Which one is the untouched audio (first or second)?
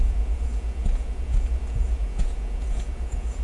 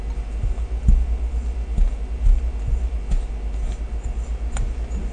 second